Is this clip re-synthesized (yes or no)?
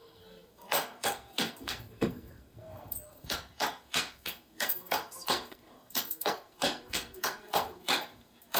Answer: yes